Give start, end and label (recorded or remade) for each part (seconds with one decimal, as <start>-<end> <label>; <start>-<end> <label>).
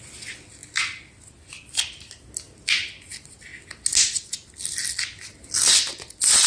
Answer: 0.0-6.5 recorded